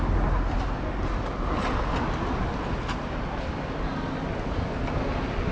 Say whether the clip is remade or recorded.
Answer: recorded